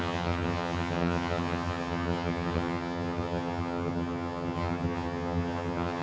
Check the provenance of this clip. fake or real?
fake